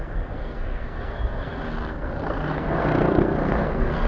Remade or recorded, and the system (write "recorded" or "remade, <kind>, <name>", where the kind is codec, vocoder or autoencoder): remade, codec, SNAC